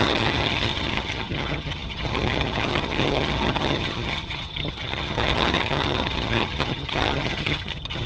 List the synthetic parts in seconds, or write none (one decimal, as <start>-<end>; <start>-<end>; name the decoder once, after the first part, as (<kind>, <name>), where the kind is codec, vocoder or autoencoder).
0.0-8.1 (vocoder, HiFi-GAN)